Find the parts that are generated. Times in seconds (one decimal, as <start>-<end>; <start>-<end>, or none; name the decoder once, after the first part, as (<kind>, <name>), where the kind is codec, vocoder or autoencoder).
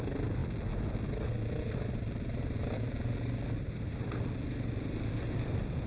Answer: none